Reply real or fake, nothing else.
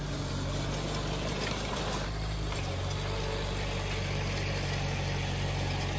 fake